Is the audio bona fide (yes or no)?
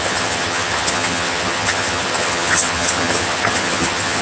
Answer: no